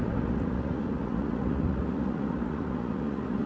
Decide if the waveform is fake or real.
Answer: fake